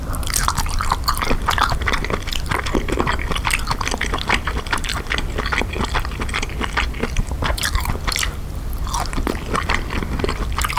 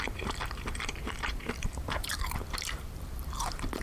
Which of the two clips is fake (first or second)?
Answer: second